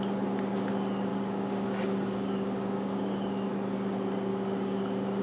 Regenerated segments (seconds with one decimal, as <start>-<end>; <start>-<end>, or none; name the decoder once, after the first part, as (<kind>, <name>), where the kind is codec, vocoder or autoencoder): 1.1-3.5 (codec, DAC); 4.3-5.2